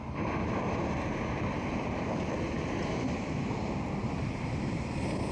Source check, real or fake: real